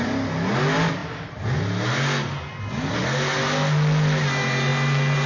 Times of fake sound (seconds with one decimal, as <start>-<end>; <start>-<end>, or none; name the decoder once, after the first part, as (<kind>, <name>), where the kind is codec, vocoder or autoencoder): none